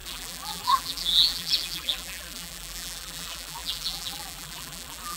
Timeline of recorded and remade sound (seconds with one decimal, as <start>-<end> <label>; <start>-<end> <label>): 0.0-5.2 remade